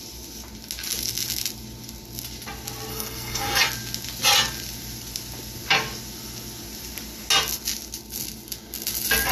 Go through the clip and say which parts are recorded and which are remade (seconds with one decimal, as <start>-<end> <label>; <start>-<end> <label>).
0.0-2.9 recorded; 2.9-3.6 remade; 3.6-9.3 recorded